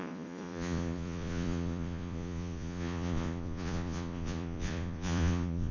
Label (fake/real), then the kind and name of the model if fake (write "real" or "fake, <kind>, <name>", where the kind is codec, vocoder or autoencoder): fake, vocoder, Vocos